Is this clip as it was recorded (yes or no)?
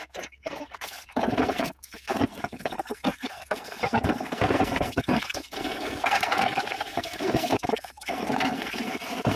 no